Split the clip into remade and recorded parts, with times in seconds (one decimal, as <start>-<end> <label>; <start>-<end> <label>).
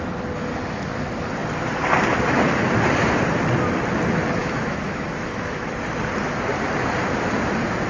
0.0-4.4 recorded; 4.4-5.7 remade; 5.7-7.9 recorded